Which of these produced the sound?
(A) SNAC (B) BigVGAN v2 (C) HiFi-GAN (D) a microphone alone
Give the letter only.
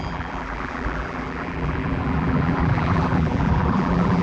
B